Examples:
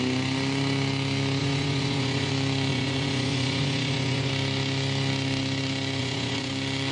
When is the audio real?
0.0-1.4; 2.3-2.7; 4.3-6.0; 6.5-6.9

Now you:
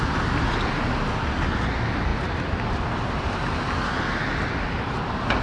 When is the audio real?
0.0-5.4

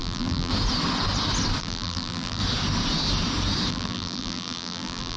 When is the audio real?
0.5-1.6; 2.4-3.7

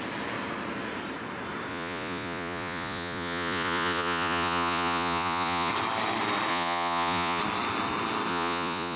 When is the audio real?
0.0-1.7; 5.7-6.5; 7.4-8.3

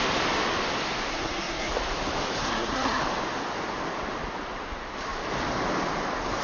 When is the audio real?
0.0-1.1; 1.7-2.4; 3.0-6.4

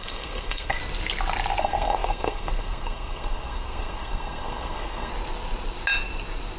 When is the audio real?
0.8-1.6; 5.1-6.6